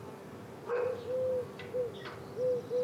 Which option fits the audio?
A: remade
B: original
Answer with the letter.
B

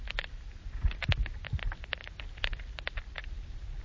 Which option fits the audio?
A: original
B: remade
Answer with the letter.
A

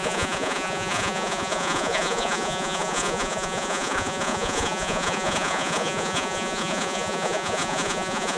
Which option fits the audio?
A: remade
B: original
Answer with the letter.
A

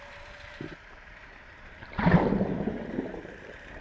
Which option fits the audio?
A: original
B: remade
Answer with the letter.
B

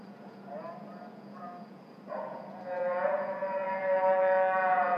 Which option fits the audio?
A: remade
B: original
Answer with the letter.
A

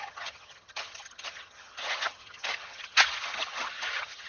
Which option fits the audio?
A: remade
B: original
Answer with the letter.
A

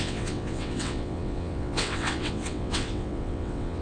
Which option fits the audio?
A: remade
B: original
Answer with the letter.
A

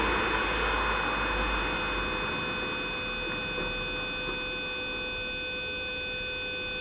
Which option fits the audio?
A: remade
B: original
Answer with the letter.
B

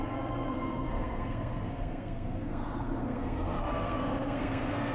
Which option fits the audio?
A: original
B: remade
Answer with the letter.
B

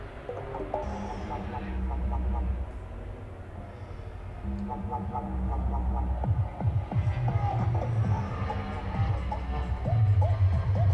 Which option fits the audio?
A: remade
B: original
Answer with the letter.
B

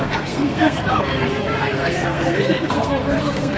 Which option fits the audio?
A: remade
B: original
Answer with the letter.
A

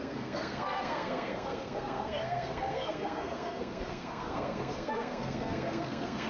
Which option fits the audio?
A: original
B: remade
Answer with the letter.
B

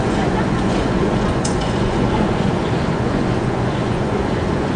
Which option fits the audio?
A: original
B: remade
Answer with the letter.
B